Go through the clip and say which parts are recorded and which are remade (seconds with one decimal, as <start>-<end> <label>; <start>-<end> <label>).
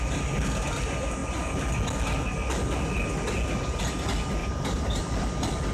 0.0-4.4 recorded; 4.4-5.0 remade; 5.0-5.7 recorded